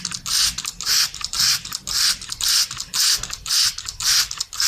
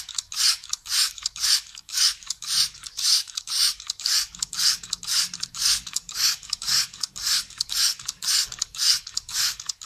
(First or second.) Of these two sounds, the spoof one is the second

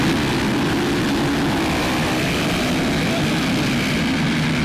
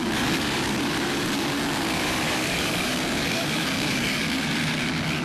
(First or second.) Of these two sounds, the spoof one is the second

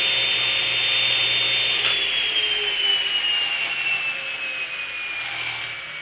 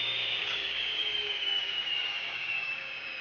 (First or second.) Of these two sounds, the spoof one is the second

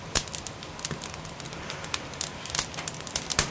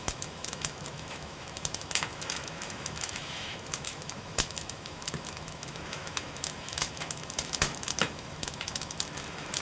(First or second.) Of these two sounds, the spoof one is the second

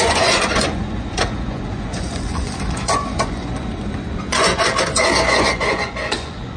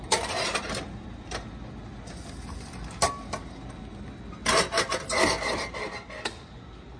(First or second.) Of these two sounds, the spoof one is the first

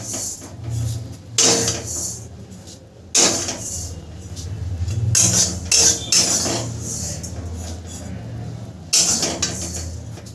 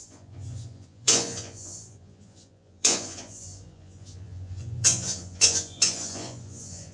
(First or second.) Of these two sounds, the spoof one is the second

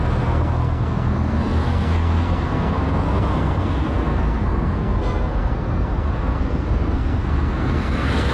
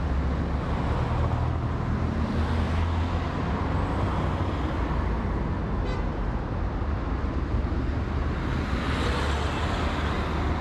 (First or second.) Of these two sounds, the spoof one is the first